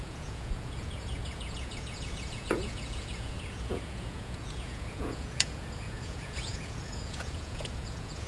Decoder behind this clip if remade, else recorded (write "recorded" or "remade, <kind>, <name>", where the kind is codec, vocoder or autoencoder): remade, vocoder, Vocos